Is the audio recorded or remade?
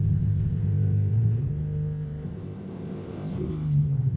remade